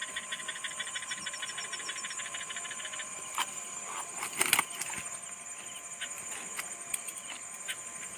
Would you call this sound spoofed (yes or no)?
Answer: no